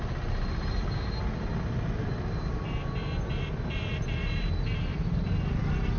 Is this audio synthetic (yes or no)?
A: no